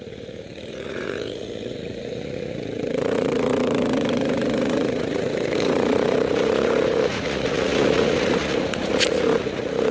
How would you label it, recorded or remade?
remade